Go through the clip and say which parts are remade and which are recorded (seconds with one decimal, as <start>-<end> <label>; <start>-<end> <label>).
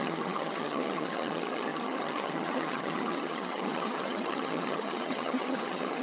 0.0-6.0 remade